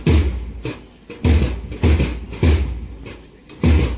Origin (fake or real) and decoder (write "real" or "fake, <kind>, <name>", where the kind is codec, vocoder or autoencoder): real